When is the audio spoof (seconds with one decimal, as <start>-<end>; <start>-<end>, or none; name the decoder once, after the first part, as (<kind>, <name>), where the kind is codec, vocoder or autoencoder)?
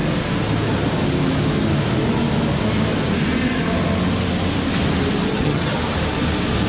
5.3-5.8 (vocoder, HiFi-GAN)